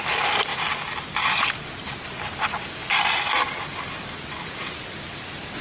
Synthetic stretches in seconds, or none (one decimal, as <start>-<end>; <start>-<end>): 0.5-2.2